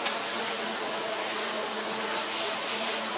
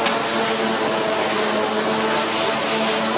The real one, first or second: second